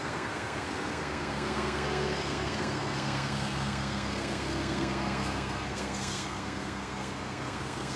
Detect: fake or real fake